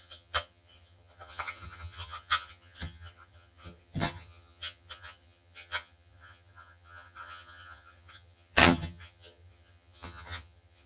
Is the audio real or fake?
fake